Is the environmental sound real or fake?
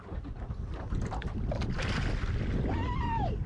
real